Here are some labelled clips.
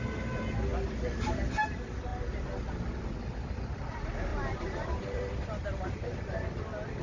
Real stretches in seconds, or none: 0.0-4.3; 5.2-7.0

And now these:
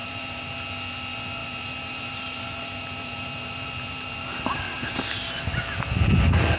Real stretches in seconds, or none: 0.5-1.4; 5.4-6.6

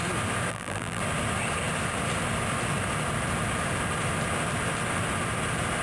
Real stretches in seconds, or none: 0.0-0.5; 1.0-5.8

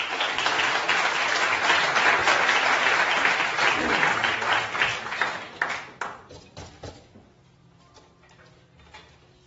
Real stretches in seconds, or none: 0.0-9.5

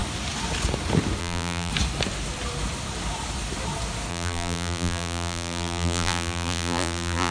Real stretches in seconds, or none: 0.0-1.2; 1.7-4.1

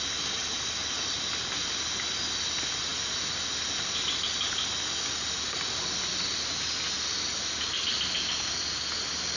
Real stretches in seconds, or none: 0.0-2.9; 3.5-9.4

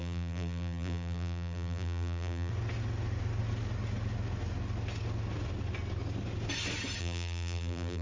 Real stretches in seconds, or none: 2.5-7.0